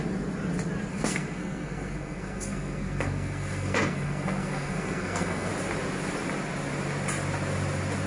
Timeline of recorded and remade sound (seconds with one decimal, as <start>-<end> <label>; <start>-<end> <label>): 0.0-0.9 recorded; 0.9-5.5 remade; 5.5-8.1 recorded